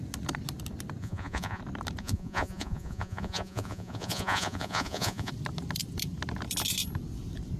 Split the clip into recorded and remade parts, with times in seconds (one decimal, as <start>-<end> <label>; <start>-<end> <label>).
0.0-1.0 recorded; 1.0-1.6 remade; 1.6-2.0 recorded; 2.0-5.3 remade; 5.3-7.6 recorded